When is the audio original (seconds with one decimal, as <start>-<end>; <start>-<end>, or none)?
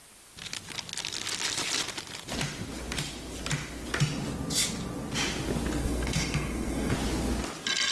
0.0-5.8; 6.9-7.9